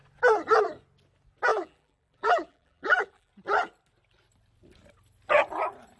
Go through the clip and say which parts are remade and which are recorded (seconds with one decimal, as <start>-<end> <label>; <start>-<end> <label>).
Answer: 0.0-1.5 recorded; 1.5-3.3 remade; 3.3-6.0 recorded